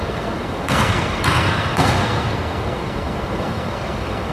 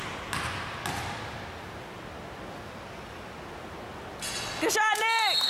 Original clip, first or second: second